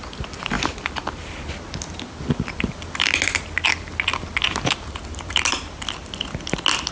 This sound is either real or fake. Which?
real